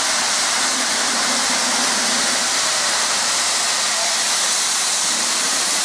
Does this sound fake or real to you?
fake